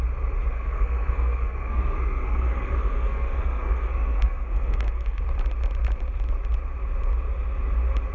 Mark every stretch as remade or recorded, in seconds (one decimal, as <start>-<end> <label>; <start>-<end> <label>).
0.0-0.5 recorded; 0.5-5.2 remade; 5.2-8.1 recorded